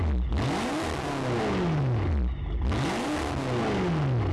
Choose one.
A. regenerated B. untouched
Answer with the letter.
B